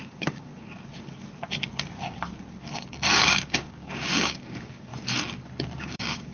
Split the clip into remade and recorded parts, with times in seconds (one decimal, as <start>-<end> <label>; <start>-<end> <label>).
0.0-0.5 remade; 0.5-3.2 recorded; 3.2-4.9 remade; 4.9-5.8 recorded; 5.8-6.3 remade